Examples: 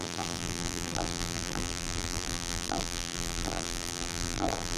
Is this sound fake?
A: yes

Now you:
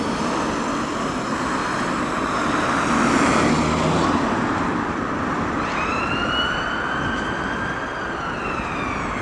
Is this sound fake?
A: no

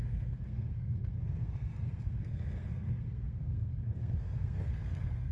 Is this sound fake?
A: yes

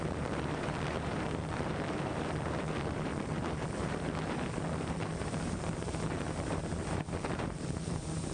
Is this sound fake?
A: yes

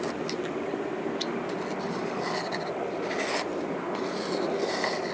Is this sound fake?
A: no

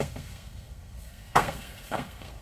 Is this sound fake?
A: yes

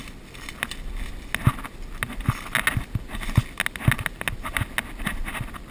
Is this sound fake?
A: no